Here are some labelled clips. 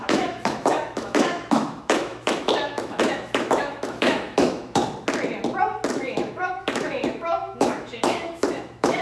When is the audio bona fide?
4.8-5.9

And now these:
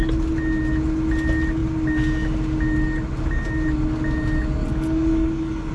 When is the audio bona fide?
0.0-4.6

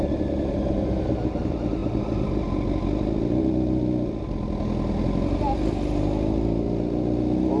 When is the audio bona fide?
0.0-7.6